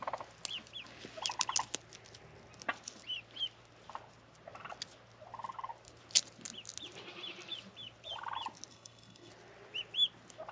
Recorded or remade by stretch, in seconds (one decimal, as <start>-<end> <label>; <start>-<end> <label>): 0.0-8.7 recorded; 8.7-9.3 remade; 9.3-10.5 recorded